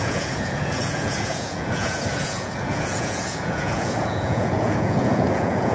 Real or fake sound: fake